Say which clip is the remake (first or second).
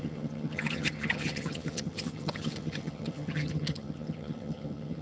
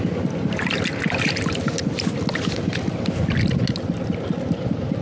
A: first